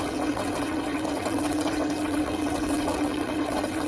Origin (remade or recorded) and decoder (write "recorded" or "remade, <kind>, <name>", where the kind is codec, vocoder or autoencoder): remade, vocoder, WaveNeXt